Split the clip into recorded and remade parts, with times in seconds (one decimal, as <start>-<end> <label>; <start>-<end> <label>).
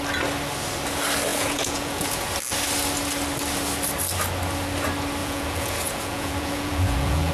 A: 0.0-1.3 recorded; 1.3-2.3 remade; 2.3-5.2 recorded; 5.2-7.3 remade